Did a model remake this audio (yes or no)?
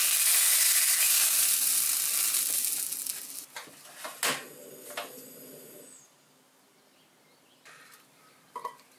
no